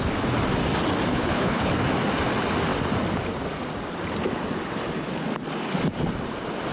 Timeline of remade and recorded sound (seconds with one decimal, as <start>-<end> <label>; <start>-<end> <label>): 0.0-1.1 recorded; 1.1-1.7 remade; 1.7-6.7 recorded